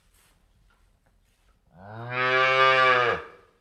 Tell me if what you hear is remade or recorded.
recorded